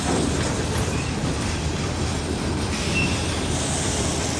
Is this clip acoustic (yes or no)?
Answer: yes